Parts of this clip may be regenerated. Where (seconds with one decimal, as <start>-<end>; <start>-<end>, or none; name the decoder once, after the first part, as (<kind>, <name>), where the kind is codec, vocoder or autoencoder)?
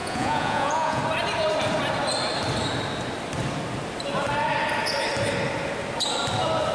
0.0-1.0 (vocoder, Vocos)